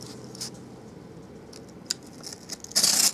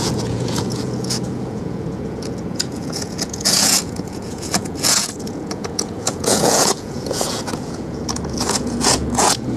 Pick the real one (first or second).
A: first